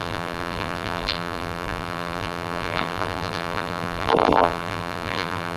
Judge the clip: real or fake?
fake